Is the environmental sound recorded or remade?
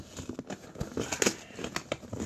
recorded